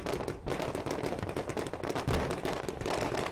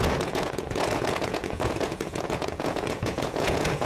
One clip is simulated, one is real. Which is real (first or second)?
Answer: first